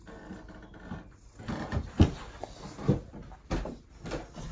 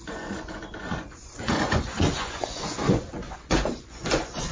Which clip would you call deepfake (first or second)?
second